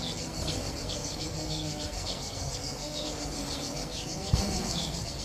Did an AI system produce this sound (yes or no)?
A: yes